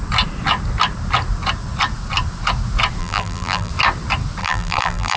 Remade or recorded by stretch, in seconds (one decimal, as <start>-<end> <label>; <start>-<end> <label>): 0.0-3.0 recorded; 3.0-3.7 remade; 3.7-4.4 recorded; 4.4-5.2 remade